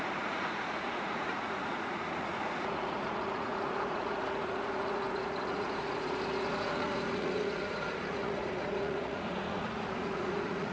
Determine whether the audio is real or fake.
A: fake